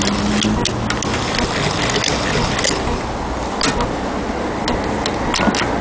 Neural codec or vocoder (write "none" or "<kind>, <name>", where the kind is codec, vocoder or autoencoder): none